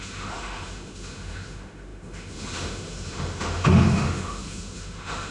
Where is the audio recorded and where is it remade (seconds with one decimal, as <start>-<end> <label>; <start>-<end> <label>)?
0.0-5.3 remade